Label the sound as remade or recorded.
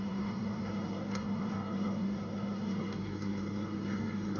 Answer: remade